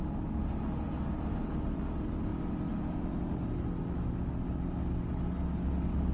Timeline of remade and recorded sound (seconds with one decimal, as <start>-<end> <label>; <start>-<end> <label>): 0.0-6.1 recorded

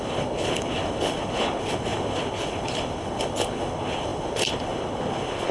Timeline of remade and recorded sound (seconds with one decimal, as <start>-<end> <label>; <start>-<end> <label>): 0.0-5.5 remade

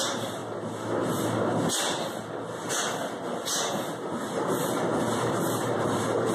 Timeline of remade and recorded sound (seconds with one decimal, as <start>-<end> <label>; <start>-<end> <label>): 0.0-0.4 remade; 0.4-4.2 recorded; 4.2-6.3 remade

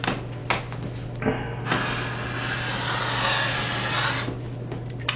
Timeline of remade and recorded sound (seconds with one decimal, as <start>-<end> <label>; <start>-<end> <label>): 0.0-5.2 recorded

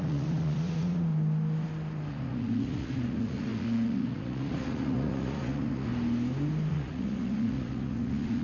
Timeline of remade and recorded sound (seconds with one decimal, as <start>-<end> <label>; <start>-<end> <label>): 0.0-1.1 remade; 1.1-2.1 recorded; 2.1-5.9 remade; 5.9-6.7 recorded; 6.7-8.4 remade

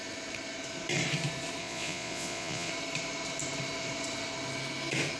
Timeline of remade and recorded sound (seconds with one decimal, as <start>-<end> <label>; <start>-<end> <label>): 0.0-1.6 recorded; 1.6-2.7 remade; 2.7-5.2 recorded

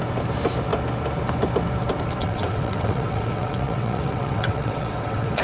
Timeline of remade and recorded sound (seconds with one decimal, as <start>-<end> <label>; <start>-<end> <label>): 0.0-2.2 recorded; 2.2-5.4 remade